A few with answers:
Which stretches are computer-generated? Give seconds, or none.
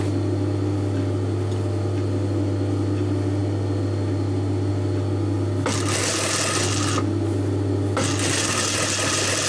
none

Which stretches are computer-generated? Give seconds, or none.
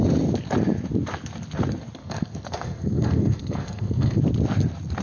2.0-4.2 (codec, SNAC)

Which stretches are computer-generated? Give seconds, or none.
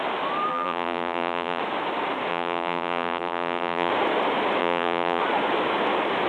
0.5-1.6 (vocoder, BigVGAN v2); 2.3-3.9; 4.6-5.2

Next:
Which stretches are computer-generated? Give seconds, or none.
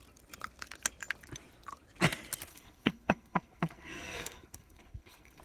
2.5-5.4 (codec, SNAC)